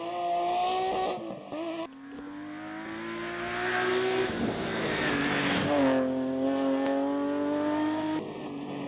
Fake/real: real